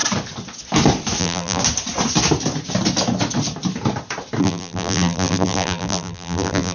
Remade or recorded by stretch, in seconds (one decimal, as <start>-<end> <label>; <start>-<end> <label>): 0.0-1.2 recorded; 1.2-1.6 remade; 1.6-4.4 recorded; 4.4-6.7 remade